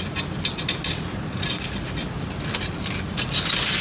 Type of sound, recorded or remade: recorded